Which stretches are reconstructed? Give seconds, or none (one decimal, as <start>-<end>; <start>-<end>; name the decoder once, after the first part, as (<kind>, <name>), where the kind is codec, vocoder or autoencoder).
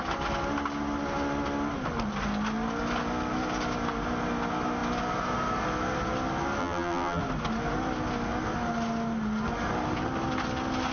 6.6-7.2 (vocoder, BigVGAN v2)